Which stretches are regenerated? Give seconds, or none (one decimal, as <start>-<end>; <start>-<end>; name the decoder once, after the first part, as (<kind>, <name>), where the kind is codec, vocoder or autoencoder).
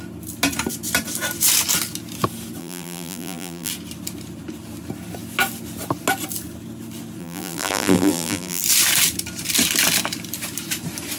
2.6-3.7 (vocoder, BigVGAN v2); 7.2-8.6